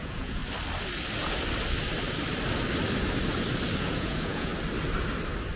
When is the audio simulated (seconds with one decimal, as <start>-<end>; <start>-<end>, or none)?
0.0-0.4; 3.8-4.5